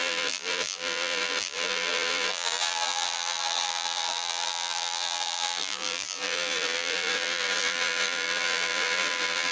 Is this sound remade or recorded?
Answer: remade